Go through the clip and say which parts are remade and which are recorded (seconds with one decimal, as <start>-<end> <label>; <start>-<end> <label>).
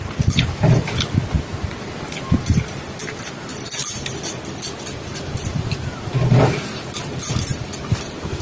0.0-8.4 recorded